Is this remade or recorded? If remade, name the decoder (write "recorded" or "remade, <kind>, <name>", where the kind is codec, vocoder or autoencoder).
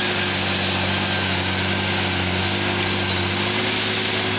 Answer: recorded